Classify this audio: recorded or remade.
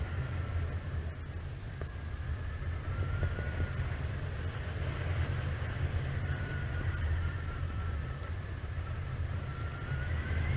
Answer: recorded